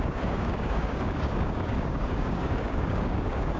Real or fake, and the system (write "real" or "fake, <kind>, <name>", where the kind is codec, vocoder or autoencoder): fake, codec, DAC